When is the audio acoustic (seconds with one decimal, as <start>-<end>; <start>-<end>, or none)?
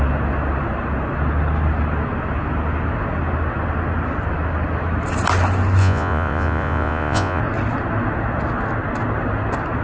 0.0-5.8; 7.4-9.8